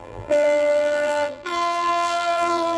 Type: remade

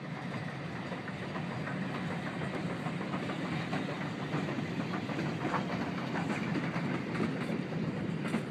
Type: recorded